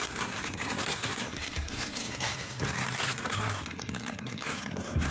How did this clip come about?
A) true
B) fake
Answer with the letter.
B